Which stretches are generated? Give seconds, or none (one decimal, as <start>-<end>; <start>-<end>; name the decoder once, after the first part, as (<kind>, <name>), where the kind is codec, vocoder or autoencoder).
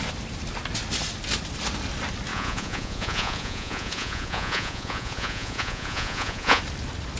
2.3-6.6 (vocoder, Vocos)